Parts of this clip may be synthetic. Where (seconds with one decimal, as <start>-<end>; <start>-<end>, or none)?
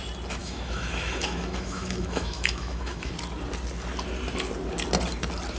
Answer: 0.4-3.1